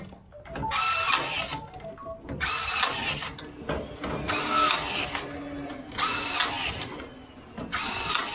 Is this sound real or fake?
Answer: real